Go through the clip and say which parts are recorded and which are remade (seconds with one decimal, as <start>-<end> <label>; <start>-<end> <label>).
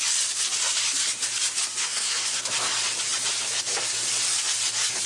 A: 0.0-1.8 recorded; 1.8-2.4 remade; 2.4-5.1 recorded